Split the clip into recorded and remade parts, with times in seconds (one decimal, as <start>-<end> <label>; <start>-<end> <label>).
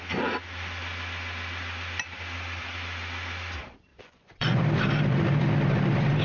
0.0-3.9 recorded; 3.9-4.6 remade; 4.6-6.2 recorded